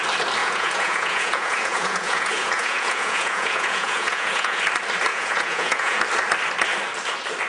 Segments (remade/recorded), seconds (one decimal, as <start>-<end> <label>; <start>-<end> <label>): 0.0-0.4 recorded; 0.4-4.6 remade; 4.6-5.1 recorded; 5.1-6.0 remade; 6.0-7.5 recorded